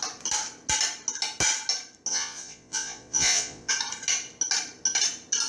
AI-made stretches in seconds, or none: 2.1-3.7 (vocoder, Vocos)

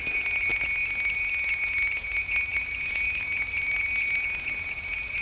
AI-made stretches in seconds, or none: none